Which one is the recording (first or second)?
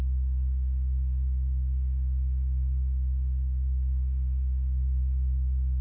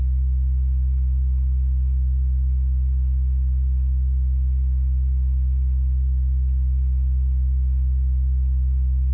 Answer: second